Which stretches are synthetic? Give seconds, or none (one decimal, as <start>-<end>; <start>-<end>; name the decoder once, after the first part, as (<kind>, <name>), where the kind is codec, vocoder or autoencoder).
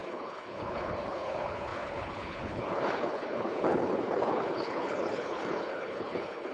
0.0-6.5 (codec, HILCodec)